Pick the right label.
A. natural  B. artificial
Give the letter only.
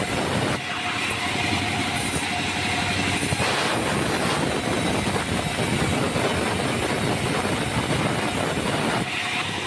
A